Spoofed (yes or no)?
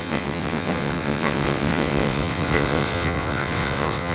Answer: yes